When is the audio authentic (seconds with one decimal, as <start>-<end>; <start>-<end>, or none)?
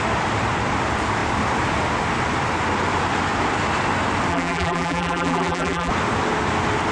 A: 0.0-4.3; 5.9-6.9